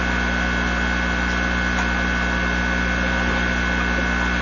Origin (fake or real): real